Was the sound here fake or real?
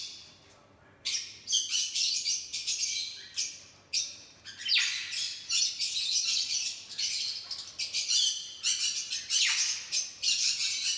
real